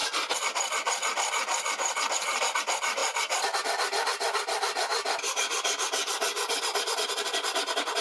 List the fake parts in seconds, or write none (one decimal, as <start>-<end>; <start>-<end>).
none